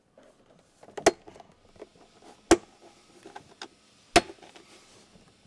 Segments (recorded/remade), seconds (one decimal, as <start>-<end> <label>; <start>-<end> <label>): 0.0-5.5 recorded